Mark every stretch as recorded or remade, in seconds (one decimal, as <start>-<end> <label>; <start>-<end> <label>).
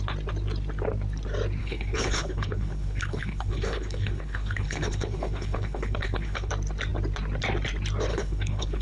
0.0-1.6 recorded; 1.6-6.5 remade; 6.5-8.1 recorded; 8.1-8.8 remade